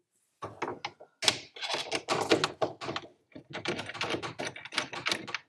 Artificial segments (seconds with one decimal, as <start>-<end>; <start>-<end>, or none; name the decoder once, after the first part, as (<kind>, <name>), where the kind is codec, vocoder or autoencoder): 3.1-4.4 (vocoder, BigVGAN v2)